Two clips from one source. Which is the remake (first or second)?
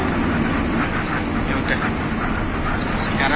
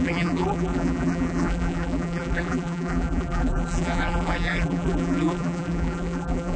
second